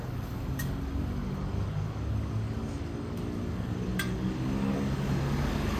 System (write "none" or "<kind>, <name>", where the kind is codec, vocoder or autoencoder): codec, DAC